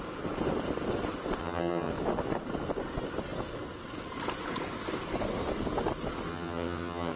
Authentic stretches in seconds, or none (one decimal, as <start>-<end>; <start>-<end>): 0.0-1.4; 1.9-6.3